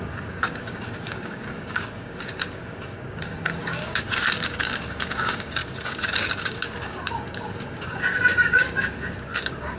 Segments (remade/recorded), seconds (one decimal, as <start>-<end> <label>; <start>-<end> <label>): 0.0-9.8 remade